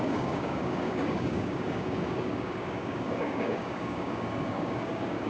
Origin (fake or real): fake